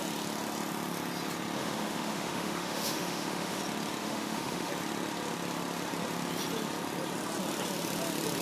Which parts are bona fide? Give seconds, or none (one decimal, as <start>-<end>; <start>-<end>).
0.0-1.6; 3.6-4.0; 4.7-8.4